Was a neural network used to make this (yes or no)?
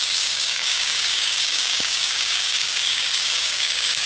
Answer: yes